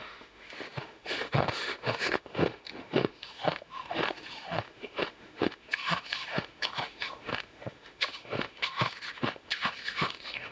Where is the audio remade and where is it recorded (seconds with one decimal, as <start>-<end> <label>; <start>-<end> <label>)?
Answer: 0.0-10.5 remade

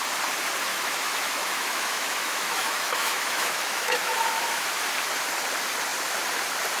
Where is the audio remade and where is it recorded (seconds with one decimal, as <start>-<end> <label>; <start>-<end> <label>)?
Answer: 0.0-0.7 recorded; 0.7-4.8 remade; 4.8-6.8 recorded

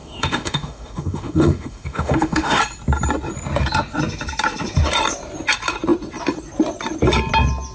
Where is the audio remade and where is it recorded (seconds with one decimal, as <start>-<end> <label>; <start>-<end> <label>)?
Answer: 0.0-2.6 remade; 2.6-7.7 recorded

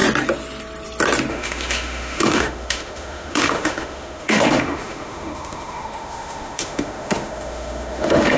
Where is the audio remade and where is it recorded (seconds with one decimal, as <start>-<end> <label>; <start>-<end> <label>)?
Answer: 0.0-1.3 recorded; 1.3-8.4 remade

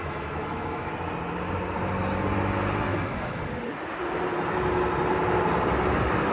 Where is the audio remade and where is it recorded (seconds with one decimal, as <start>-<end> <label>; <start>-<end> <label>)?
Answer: 0.0-0.9 remade; 0.9-2.9 recorded; 2.9-3.5 remade; 3.5-6.3 recorded

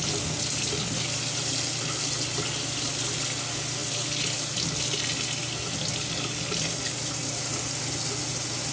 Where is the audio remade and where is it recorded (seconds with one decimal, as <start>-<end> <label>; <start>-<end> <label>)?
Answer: 0.0-8.7 recorded